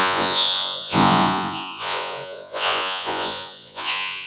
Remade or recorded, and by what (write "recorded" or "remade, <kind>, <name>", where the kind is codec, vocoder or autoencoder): remade, vocoder, Vocos